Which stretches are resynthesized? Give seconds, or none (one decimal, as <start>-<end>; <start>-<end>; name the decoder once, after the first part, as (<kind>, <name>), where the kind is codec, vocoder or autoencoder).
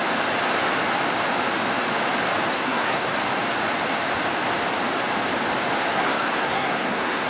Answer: 2.5-3.1 (codec, SNAC); 5.9-7.3